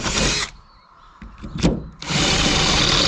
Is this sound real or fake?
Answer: real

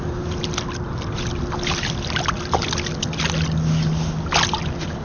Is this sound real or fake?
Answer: real